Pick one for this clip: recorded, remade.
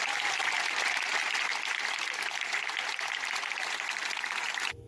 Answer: recorded